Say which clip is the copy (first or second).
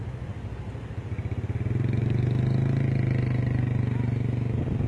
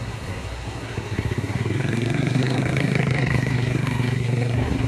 second